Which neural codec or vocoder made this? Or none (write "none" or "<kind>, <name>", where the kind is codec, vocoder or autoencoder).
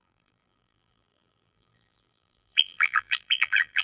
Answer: vocoder, BigVGAN v2